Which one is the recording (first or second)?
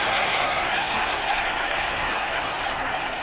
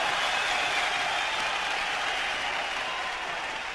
second